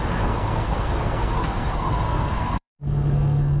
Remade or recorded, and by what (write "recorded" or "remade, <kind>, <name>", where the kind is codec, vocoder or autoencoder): remade, codec, SNAC